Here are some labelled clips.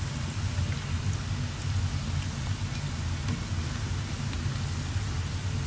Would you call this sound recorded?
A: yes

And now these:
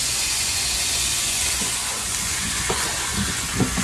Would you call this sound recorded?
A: no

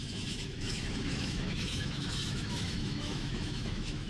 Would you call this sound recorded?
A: no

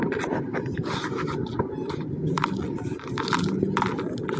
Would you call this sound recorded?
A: yes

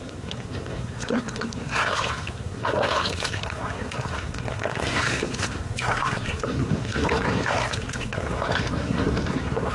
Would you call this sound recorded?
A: no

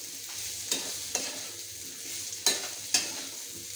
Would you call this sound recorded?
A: yes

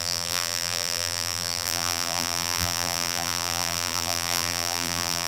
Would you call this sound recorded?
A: no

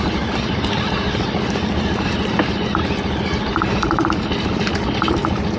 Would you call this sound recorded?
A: yes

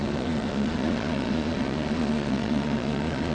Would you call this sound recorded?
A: no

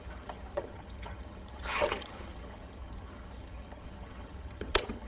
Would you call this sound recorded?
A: no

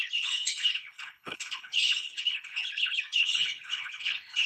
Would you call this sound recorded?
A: no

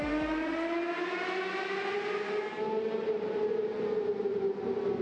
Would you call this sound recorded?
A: yes